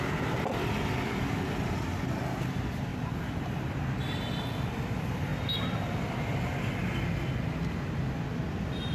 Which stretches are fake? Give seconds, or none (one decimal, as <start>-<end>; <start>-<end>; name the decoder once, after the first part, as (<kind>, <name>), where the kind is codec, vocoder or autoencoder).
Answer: 2.9-4.2 (vocoder, BigVGAN v2)